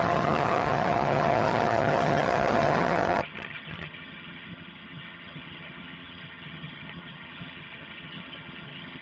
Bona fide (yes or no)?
no